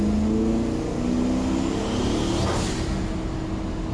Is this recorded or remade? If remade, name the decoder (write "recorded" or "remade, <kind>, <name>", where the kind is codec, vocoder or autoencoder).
recorded